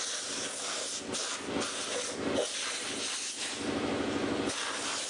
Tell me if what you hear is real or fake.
real